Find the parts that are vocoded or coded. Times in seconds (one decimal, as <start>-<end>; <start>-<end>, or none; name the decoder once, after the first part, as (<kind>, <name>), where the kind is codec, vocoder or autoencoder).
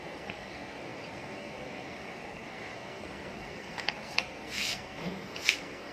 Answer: 0.0-5.9 (codec, SNAC)